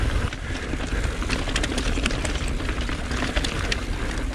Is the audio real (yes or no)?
yes